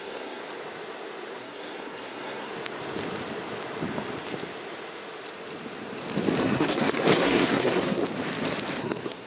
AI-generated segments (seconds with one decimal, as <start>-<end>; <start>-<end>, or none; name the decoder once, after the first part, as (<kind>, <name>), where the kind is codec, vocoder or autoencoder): 0.0-0.4 (codec, SNAC); 1.4-2.5; 6.4-8.0; 8.8-9.3